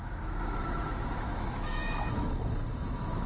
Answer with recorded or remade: remade